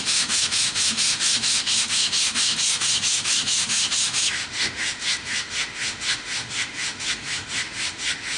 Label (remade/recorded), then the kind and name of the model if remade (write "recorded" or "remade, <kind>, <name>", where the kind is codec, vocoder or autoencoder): remade, autoencoder, DAC-VAE